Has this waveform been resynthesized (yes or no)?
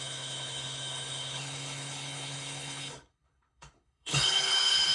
yes